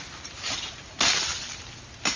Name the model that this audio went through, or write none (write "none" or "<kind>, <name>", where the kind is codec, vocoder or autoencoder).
none